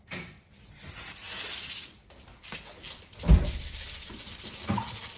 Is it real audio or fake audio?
real